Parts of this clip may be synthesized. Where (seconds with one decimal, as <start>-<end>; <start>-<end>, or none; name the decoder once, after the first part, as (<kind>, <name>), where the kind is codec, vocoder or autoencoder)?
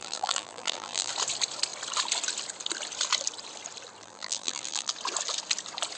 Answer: 0.0-1.1 (vocoder, BigVGAN v2); 4.0-4.9